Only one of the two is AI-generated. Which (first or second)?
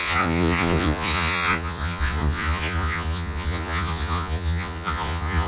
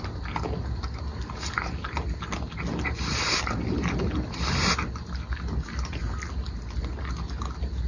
first